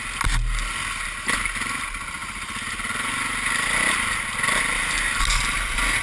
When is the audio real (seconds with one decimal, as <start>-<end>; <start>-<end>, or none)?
0.0-6.0